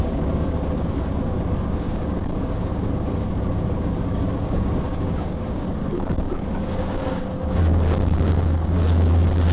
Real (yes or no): no